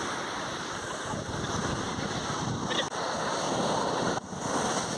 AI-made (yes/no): no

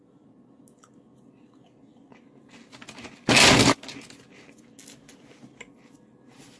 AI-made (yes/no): no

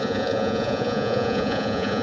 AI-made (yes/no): yes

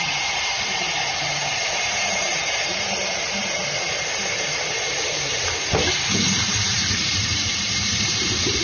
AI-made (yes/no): yes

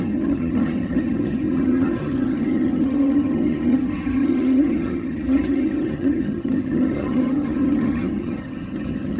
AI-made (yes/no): yes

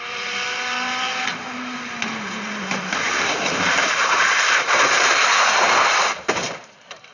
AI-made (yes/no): yes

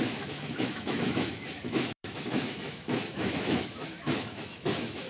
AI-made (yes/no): yes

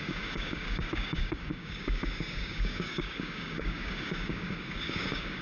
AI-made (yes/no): yes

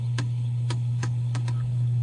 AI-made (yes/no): yes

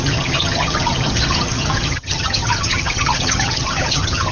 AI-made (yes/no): yes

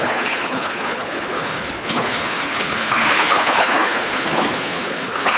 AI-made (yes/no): yes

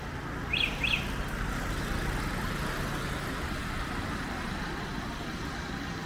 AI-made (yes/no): no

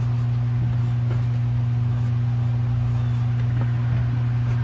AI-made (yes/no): no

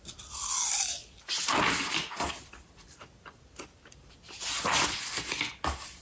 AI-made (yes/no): no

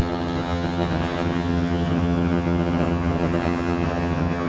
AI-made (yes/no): yes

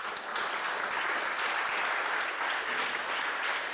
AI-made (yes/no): no